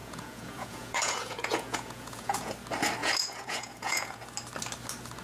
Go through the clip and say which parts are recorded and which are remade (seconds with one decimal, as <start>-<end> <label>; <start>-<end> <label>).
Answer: 0.0-2.5 remade; 2.5-3.0 recorded; 3.0-4.2 remade; 4.2-5.2 recorded